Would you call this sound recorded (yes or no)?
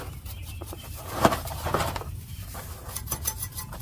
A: yes